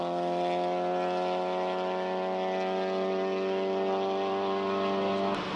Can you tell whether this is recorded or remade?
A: recorded